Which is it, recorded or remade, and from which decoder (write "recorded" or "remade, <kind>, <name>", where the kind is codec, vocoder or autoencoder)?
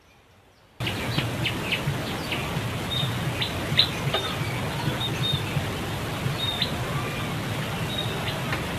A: recorded